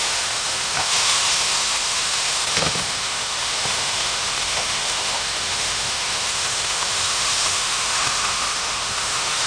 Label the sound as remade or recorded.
remade